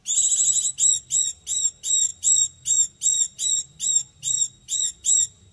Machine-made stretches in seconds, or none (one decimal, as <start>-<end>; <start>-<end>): none